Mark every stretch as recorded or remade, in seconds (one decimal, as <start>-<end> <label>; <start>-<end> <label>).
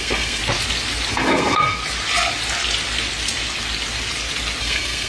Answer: 0.0-0.4 remade; 0.4-1.1 recorded; 1.1-1.8 remade; 1.8-4.6 recorded; 4.6-5.1 remade